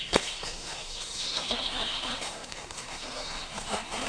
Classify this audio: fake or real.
fake